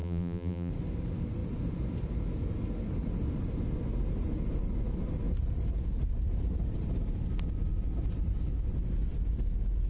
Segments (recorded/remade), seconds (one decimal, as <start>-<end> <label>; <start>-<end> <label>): 0.0-0.7 remade; 0.7-9.9 recorded